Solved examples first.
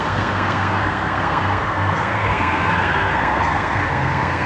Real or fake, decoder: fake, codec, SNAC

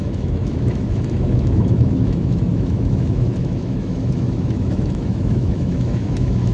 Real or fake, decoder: fake, autoencoder, DAC-VAE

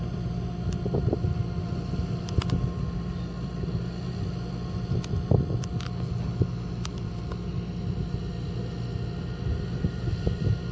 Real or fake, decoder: real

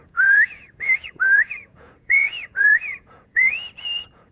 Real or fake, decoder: fake, vocoder, Vocos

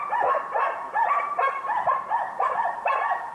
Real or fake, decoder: fake, vocoder, BigVGAN v2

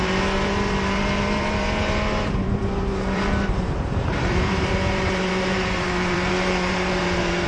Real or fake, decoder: fake, vocoder, BigVGAN v2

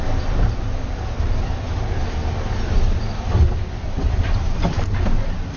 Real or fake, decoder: real